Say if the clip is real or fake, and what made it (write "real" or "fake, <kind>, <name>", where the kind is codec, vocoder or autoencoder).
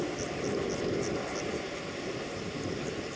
real